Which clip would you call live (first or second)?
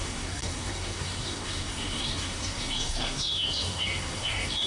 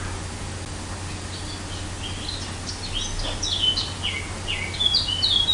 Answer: second